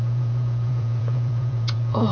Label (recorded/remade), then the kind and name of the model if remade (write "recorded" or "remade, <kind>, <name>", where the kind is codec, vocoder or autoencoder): remade, vocoder, Vocos